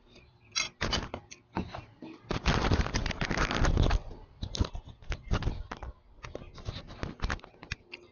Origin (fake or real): real